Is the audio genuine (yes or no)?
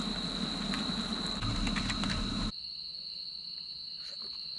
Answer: yes